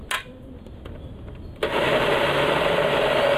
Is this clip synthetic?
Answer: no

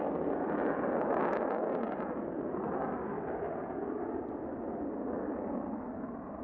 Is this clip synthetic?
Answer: no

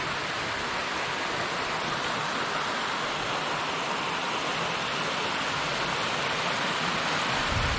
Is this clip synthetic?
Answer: no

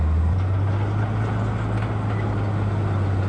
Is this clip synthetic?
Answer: no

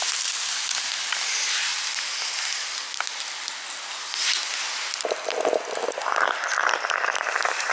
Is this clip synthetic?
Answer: no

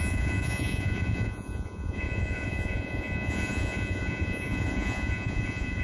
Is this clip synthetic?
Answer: yes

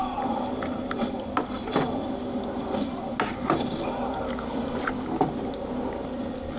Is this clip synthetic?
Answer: no